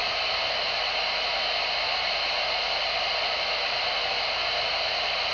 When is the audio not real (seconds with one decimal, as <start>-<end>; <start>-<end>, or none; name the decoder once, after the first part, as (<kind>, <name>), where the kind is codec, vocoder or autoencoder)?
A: none